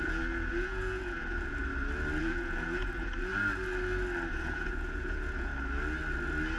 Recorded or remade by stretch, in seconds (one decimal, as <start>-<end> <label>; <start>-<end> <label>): 0.0-1.6 remade; 1.6-2.2 recorded; 2.2-3.3 remade; 3.3-4.3 recorded; 4.3-5.5 remade; 5.5-6.6 recorded